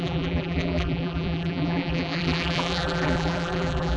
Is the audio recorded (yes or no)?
no